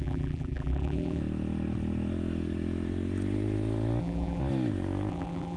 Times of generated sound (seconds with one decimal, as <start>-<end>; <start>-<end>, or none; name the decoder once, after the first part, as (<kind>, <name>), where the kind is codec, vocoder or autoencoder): 0.0-1.2 (vocoder, BigVGAN v2); 4.0-4.4; 5.1-5.6